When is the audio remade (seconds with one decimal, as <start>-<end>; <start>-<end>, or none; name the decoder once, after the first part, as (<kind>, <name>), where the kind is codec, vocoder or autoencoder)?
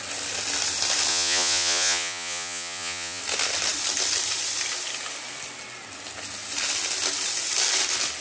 1.1-3.2 (vocoder, Vocos)